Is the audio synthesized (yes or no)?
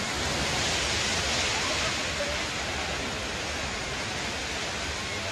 no